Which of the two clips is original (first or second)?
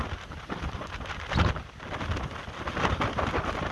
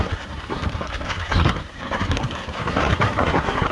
first